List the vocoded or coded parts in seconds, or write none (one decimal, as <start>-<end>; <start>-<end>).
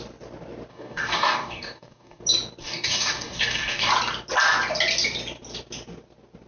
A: 0.7-2.2; 2.6-3.9